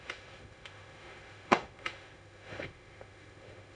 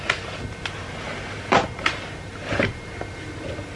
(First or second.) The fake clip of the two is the first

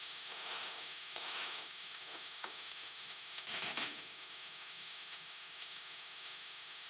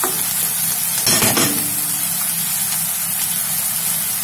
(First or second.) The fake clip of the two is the first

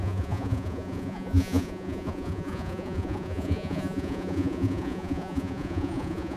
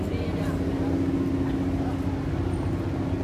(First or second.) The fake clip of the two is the first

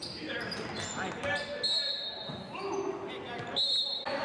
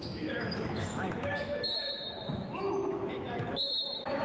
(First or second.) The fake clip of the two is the second